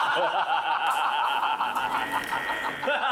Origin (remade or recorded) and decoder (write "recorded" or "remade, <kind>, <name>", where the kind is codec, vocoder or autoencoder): recorded